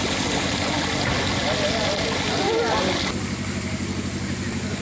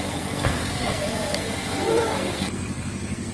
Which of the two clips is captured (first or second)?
first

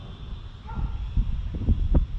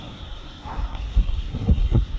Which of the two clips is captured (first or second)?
first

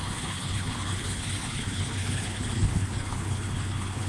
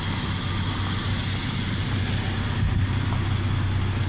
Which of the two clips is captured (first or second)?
second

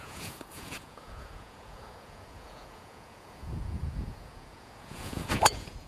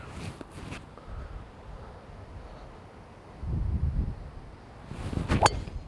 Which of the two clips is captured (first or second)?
second